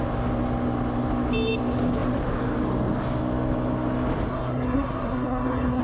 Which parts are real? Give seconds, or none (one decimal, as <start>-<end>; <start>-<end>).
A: 0.0-4.3